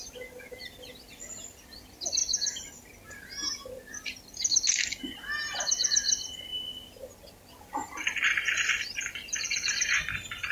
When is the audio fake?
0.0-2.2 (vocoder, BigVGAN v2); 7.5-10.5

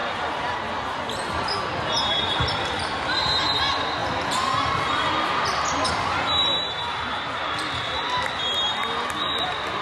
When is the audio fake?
0.0-3.4 (vocoder, BigVGAN v2)